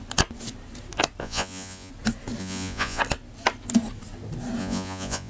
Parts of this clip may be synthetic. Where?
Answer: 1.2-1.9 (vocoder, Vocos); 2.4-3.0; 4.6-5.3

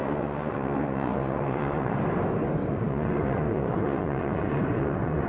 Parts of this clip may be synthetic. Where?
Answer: 0.0-2.0 (vocoder, Vocos); 2.6-5.3

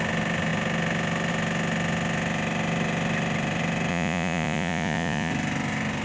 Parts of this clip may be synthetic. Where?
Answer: 3.9-5.3 (vocoder, Vocos)